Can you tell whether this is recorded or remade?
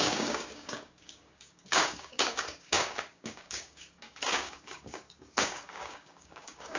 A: remade